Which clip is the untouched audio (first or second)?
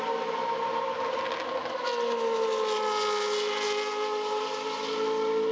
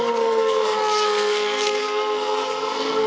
first